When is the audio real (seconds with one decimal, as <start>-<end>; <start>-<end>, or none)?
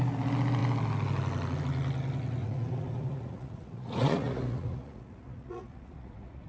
0.0-2.4